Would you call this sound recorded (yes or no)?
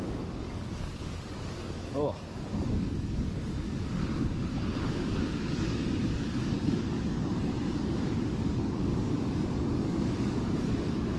no